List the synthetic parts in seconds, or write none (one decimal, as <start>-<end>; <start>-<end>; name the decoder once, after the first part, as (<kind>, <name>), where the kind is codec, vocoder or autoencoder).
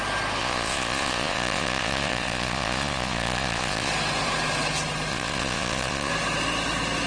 0.4-3.9 (vocoder, Vocos); 5.1-6.1